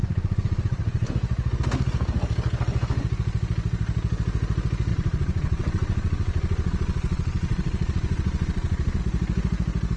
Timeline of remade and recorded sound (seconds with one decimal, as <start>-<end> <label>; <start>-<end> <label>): 0.0-1.1 remade; 1.1-4.9 recorded; 4.9-9.0 remade; 9.0-10.0 recorded